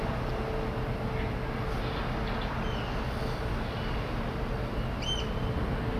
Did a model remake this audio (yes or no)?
no